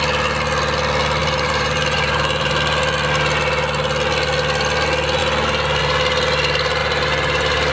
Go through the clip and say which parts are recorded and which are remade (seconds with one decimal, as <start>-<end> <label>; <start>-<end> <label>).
0.0-1.2 recorded; 1.2-2.5 remade; 2.5-6.8 recorded; 6.8-7.7 remade